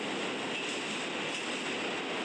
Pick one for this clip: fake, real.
real